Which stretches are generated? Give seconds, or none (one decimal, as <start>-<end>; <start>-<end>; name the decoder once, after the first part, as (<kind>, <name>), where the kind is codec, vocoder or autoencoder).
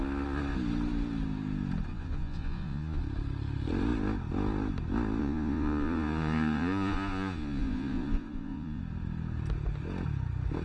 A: 1.9-3.0 (vocoder, Vocos); 5.2-8.8